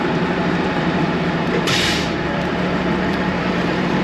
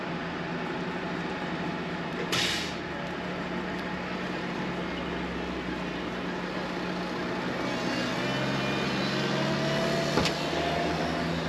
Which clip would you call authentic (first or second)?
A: second